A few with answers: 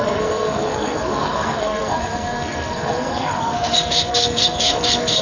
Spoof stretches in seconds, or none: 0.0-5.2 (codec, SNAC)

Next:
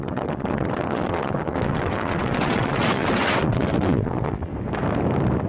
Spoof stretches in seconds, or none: 0.0-4.5 (vocoder, WaveNeXt)

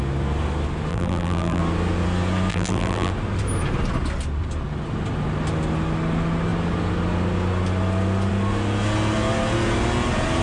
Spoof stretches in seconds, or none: 0.9-1.6 (vocoder, BigVGAN v2); 2.5-3.1